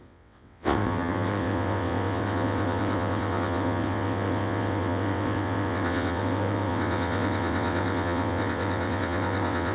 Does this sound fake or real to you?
fake